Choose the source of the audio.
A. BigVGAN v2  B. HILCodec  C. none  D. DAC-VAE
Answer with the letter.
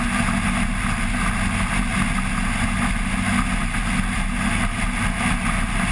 C